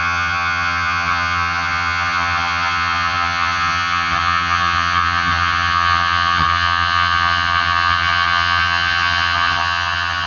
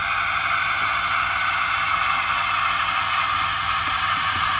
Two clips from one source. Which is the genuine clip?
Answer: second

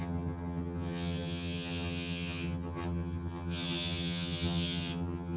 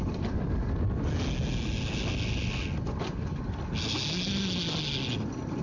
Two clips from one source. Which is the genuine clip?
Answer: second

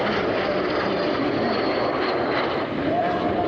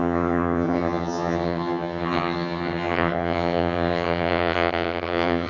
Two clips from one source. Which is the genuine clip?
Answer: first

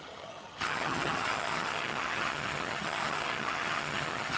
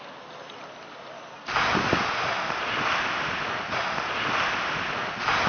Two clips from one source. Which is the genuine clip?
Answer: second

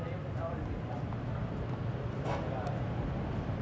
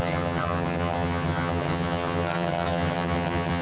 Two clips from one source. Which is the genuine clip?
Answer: first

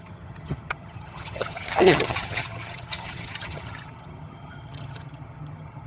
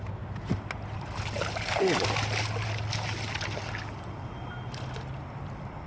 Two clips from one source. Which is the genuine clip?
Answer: second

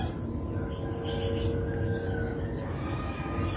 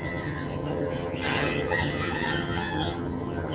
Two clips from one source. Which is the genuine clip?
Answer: first